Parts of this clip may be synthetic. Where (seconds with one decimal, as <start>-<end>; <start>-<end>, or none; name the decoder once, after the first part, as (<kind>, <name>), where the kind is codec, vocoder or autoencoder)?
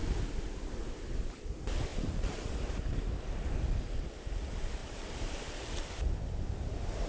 1.9-3.2 (vocoder, BigVGAN v2); 4.8-5.9